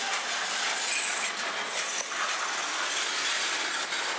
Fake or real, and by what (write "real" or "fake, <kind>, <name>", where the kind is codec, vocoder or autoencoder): real